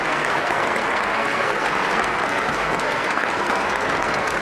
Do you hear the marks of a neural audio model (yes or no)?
yes